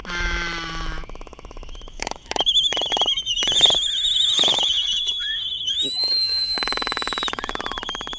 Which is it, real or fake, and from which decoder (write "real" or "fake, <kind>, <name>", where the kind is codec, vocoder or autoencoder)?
fake, autoencoder, DAC-VAE